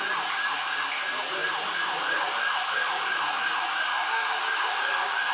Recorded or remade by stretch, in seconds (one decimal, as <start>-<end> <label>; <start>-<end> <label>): 0.0-3.9 recorded; 3.9-5.3 remade